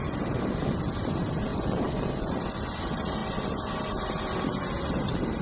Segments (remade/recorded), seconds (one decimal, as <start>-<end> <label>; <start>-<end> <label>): 0.0-1.5 recorded; 1.5-2.4 remade; 2.4-5.4 recorded